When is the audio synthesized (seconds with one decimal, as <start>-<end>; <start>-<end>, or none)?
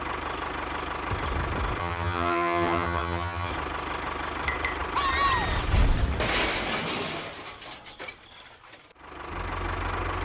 1.8-3.5